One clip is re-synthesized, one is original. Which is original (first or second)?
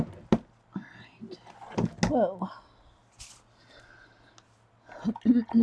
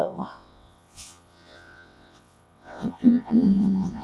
first